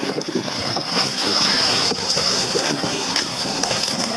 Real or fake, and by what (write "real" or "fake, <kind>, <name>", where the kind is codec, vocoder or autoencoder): fake, codec, SNAC